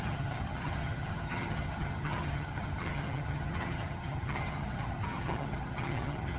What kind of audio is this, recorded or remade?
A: remade